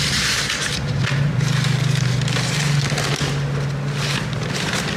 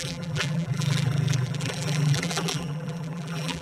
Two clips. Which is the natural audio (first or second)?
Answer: first